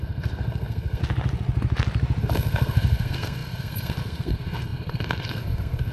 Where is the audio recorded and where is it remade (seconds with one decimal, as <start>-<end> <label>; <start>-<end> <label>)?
0.0-1.0 remade; 1.0-2.2 recorded; 2.2-5.9 remade